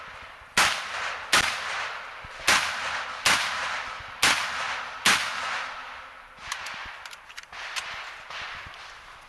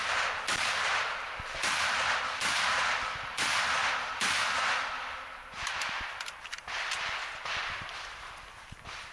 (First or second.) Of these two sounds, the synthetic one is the second